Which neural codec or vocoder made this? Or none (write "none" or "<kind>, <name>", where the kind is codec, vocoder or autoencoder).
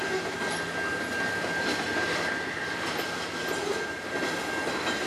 none